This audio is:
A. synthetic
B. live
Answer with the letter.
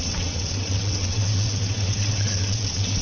A